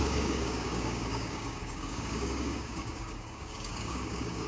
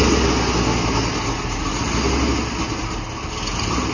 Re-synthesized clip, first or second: first